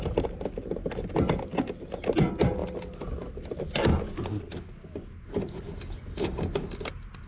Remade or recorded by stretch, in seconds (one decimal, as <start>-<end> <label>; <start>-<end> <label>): 0.0-7.3 recorded